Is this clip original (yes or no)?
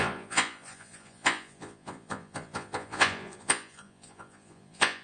no